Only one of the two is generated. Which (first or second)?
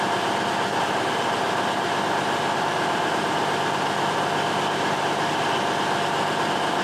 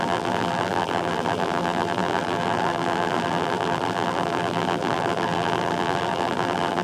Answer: second